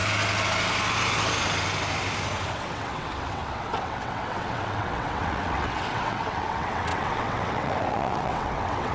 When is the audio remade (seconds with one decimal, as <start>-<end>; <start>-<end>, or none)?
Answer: 2.5-8.9